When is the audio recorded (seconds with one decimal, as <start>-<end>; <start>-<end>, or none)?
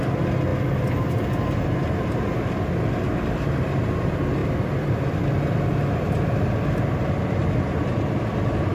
0.0-4.4; 6.8-7.4